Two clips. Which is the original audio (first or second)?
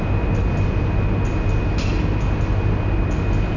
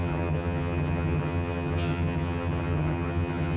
first